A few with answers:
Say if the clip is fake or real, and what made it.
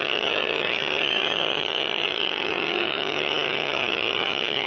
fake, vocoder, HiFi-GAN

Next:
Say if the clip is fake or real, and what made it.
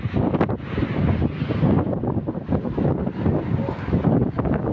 real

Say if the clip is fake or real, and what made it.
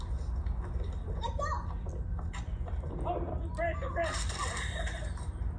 real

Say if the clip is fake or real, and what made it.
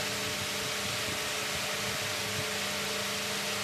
real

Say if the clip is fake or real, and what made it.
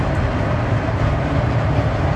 fake, vocoder, BigVGAN v2